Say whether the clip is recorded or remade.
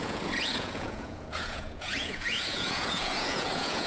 remade